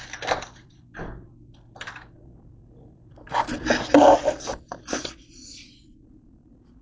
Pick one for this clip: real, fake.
fake